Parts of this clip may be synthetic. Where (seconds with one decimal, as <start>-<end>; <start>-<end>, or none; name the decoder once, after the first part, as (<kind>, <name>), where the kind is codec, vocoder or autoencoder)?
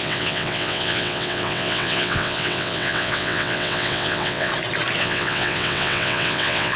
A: 0.0-4.5 (vocoder, WaveNeXt); 5.0-6.8